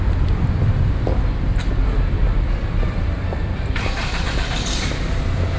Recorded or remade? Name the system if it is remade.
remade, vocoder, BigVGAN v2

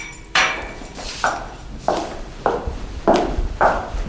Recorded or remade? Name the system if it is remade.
remade, vocoder, BigVGAN v2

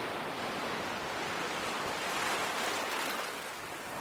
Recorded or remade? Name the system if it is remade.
recorded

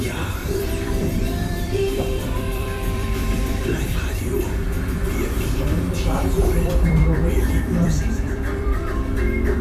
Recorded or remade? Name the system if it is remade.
remade, vocoder, BigVGAN v2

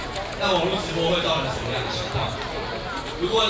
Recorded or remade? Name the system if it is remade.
recorded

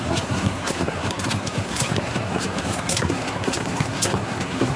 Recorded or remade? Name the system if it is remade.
remade, codec, SNAC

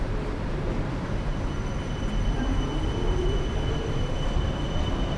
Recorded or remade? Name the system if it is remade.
remade, vocoder, BigVGAN v2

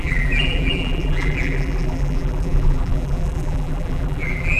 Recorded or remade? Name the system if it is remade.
remade, vocoder, BigVGAN v2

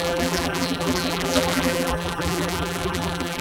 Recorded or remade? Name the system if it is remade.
remade, vocoder, BigVGAN v2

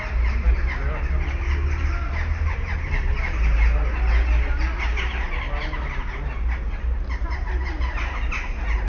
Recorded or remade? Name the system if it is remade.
recorded